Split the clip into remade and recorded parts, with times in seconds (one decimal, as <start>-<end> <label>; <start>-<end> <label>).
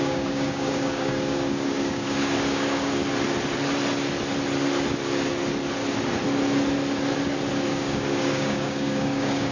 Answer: 0.0-3.0 remade; 3.0-7.7 recorded; 7.7-9.5 remade